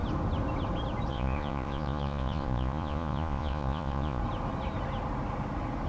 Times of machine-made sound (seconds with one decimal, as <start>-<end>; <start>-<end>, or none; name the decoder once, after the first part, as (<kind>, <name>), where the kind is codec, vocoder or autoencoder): 1.1-4.2 (vocoder, Vocos)

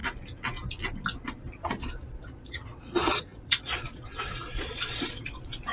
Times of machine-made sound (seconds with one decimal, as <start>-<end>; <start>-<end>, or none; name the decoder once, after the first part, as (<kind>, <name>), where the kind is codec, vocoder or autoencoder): 1.4-5.7 (vocoder, Vocos)

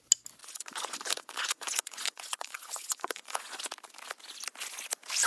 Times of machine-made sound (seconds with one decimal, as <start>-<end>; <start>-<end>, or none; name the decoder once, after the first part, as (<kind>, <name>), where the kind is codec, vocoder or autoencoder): 0.4-3.6 (vocoder, Vocos)

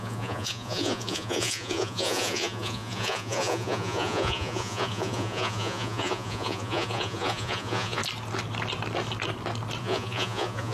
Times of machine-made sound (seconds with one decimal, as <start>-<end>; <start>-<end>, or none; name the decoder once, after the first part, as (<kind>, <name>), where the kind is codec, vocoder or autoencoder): 0.0-8.0 (vocoder, Vocos); 9.8-10.7

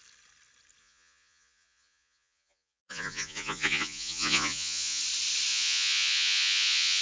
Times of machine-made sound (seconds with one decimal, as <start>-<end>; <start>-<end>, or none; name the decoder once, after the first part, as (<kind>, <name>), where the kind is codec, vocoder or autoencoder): 0.8-5.0 (vocoder, Vocos); 5.5-7.0

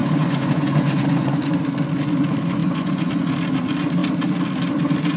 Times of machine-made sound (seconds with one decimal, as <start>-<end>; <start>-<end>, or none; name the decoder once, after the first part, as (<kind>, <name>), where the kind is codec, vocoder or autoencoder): 0.0-1.4 (vocoder, Vocos); 2.6-3.1

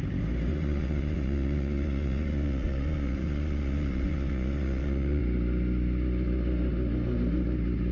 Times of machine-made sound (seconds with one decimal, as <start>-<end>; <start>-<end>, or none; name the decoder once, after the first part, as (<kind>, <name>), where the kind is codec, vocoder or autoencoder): 0.5-5.2 (vocoder, Vocos)